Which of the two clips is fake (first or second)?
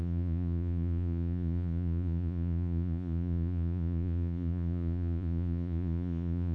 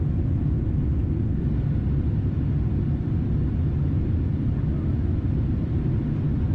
first